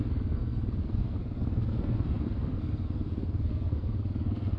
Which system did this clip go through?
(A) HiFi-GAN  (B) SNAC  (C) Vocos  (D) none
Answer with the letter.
B